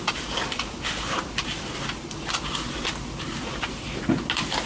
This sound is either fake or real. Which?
real